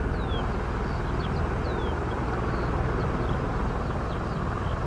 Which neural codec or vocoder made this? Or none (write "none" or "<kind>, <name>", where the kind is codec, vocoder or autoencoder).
none